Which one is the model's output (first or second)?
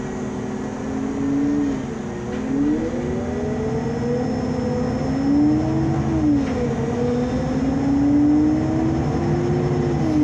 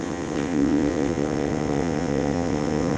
second